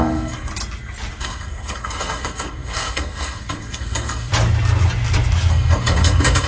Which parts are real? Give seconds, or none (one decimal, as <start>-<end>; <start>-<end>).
0.5-1.2; 4.3-5.5

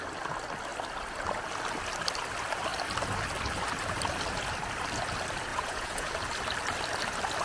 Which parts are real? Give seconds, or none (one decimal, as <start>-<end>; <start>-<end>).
0.0-5.5; 6.1-7.4

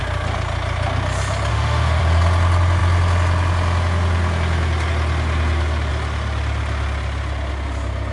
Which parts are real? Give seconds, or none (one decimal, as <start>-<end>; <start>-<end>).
0.0-1.5; 2.0-8.1

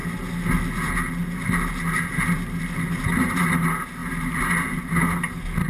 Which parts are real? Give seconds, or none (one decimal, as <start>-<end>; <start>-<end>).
0.0-5.7

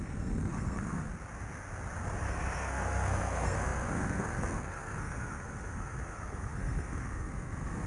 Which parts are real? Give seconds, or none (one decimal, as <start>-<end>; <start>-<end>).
1.1-2.2

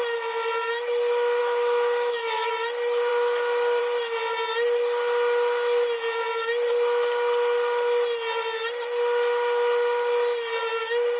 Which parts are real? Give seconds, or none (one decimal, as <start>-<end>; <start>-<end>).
0.0-1.4; 2.5-11.2

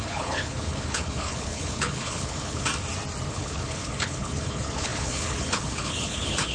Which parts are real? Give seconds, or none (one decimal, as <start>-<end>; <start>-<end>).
2.7-3.3

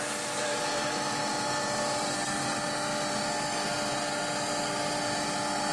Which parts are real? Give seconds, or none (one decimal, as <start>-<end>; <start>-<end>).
0.0-5.7